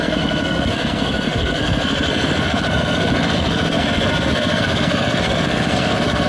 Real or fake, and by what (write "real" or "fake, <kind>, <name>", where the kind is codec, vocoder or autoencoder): fake, codec, SNAC